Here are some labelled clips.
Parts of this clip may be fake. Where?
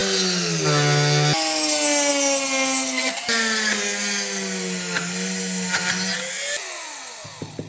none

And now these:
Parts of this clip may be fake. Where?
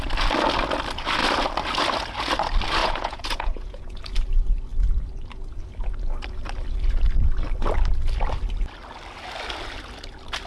2.8-4.0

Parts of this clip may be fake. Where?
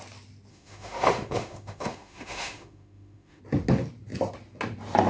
0.5-3.4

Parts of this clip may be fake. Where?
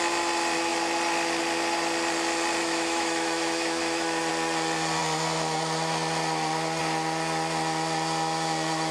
2.6-4.3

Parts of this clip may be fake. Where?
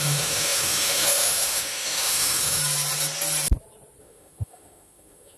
0.0-2.6; 4.0-5.4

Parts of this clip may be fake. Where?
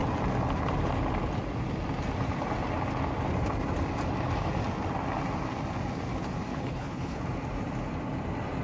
6.5-7.2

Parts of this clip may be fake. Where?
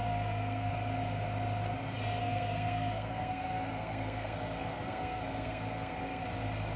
0.0-0.7; 2.2-6.2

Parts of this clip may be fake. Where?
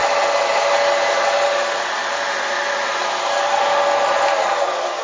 none